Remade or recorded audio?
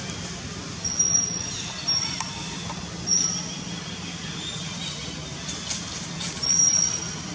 recorded